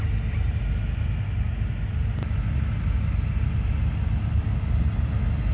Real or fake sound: real